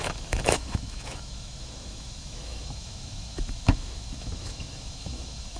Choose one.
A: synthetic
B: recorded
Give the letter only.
A